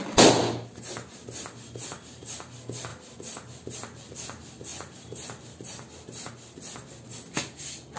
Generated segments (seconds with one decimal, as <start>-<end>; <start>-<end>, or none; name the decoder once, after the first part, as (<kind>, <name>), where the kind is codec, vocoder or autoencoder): 4.7-6.3 (vocoder, BigVGAN v2)